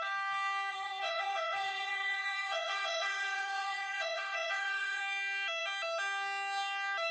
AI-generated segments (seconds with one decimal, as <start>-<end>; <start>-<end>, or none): 0.7-5.0